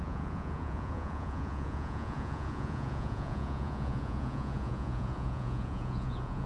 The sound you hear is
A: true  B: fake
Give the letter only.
B